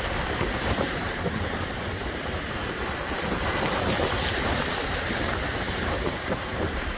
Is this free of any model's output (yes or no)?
no